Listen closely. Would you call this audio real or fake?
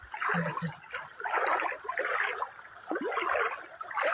real